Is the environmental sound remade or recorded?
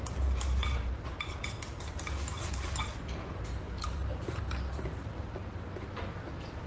recorded